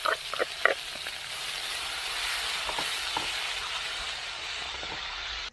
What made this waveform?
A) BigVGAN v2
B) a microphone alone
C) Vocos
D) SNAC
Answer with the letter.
B